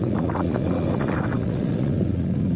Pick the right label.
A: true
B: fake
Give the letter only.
B